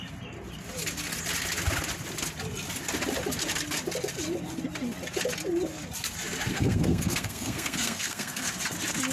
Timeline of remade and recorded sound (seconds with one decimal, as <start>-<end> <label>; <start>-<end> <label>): 0.0-6.5 recorded; 6.5-8.5 remade; 8.5-9.1 recorded